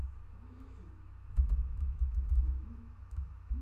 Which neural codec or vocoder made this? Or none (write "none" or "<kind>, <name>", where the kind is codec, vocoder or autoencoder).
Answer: autoencoder, DAC-VAE